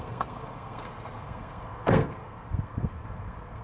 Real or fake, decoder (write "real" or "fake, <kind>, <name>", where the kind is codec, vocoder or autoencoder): fake, codec, SNAC